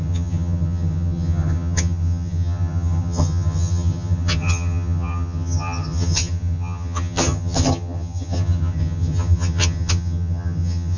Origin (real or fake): fake